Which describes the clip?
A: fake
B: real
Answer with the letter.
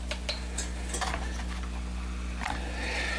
B